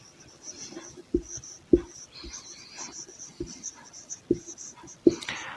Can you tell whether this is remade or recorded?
recorded